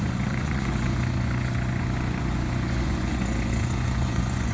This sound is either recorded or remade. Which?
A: remade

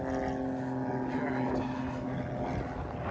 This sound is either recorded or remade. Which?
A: recorded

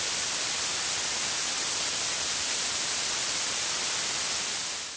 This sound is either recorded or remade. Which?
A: recorded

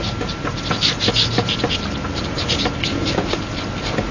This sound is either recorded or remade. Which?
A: recorded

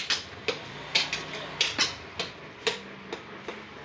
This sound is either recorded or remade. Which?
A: recorded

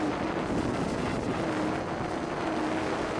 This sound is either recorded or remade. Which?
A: recorded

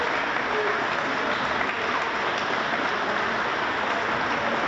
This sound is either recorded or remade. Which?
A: recorded